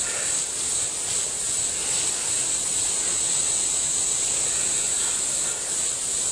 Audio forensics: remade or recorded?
recorded